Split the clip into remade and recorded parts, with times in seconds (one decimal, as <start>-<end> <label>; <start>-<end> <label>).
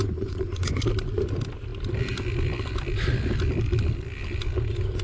0.0-0.8 remade; 0.8-5.0 recorded